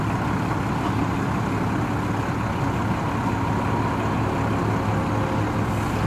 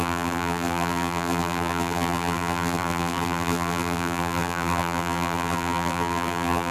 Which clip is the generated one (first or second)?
second